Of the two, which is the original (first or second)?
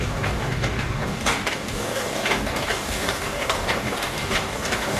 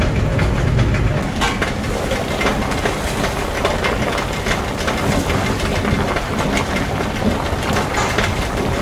second